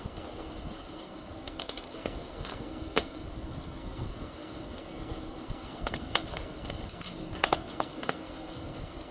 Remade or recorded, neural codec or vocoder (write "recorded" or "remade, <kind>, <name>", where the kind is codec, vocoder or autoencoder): remade, codec, SNAC